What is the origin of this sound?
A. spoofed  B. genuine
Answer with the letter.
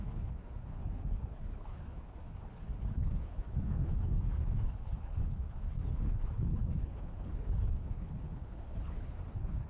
A